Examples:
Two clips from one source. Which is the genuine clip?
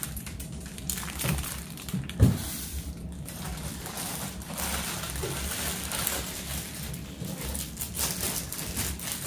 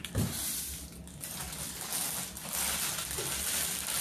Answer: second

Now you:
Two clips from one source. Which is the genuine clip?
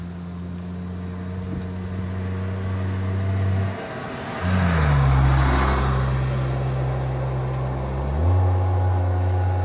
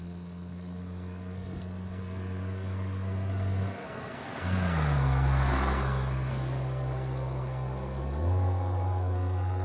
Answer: first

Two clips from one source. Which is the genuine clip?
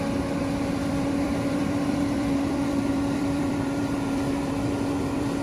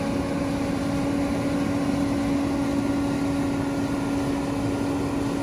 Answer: second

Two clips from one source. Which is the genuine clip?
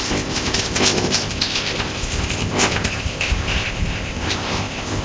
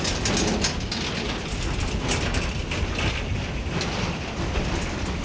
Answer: second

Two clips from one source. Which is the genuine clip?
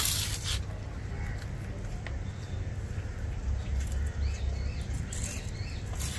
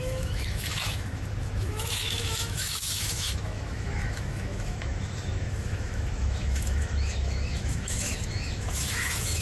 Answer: first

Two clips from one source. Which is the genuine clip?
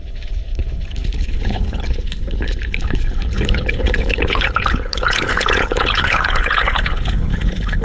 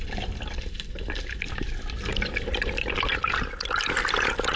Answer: second